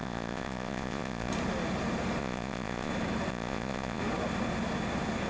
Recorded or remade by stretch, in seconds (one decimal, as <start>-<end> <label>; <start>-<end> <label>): 0.0-1.3 remade; 1.3-2.2 recorded; 2.2-2.9 remade; 2.9-3.3 recorded; 3.3-4.0 remade; 4.0-5.3 recorded